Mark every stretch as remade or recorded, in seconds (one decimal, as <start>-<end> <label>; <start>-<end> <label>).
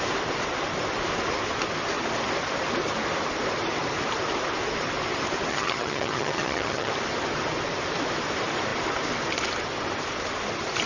0.0-5.5 recorded; 5.5-6.9 remade; 6.9-10.9 recorded